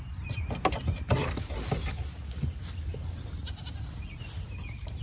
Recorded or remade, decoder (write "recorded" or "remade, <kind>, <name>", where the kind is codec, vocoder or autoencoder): recorded